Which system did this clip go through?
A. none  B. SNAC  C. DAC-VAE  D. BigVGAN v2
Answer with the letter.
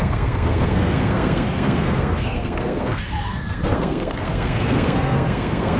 B